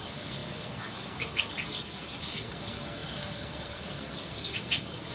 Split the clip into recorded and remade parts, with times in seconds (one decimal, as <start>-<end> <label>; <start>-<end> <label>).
0.0-5.1 remade